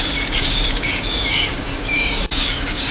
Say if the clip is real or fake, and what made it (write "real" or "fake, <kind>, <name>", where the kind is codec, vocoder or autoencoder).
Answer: fake, codec, DAC